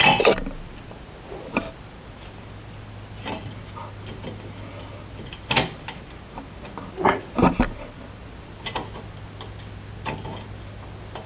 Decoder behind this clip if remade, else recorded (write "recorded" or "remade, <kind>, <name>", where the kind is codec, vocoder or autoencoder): recorded